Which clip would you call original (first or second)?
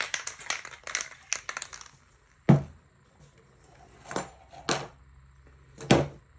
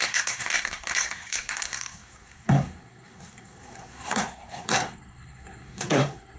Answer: first